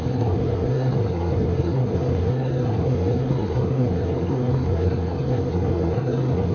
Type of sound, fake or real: fake